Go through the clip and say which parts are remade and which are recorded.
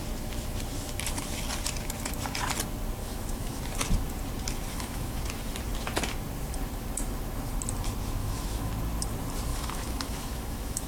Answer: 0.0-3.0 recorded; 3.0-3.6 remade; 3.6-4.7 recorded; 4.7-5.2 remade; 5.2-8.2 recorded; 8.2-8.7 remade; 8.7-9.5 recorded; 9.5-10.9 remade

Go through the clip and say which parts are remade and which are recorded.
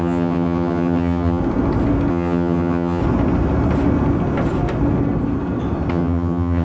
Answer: 0.0-1.4 remade; 1.4-2.1 recorded; 2.1-3.0 remade; 3.0-5.9 recorded; 5.9-6.6 remade